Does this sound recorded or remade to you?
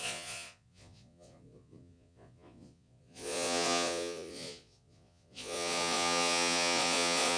remade